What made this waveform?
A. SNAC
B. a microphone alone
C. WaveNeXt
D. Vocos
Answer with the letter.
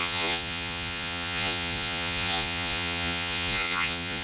D